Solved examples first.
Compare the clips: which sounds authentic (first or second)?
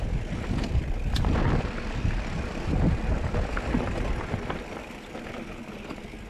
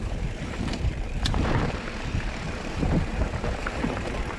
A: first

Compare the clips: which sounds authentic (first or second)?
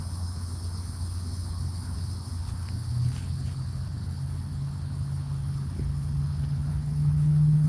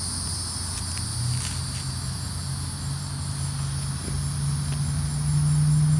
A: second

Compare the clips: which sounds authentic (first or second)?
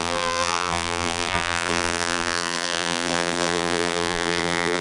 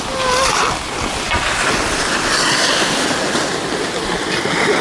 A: second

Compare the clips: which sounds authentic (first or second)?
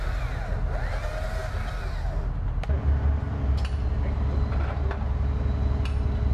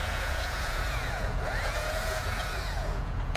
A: first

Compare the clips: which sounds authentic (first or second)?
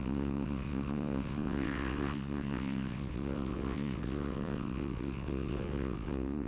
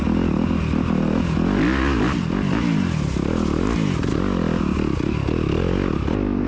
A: second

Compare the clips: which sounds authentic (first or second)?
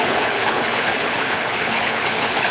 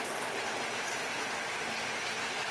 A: second